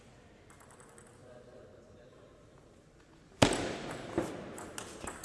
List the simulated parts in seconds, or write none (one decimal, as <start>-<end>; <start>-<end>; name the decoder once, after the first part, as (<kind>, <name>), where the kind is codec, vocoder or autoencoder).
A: 1.2-4.3 (vocoder, BigVGAN v2)